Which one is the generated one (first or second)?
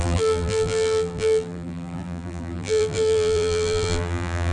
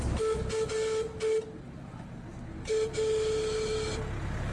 first